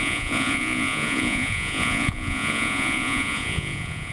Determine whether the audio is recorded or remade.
remade